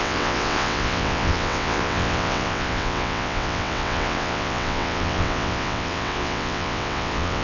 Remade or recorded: remade